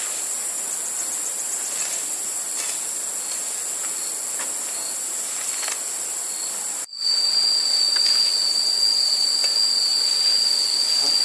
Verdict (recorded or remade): recorded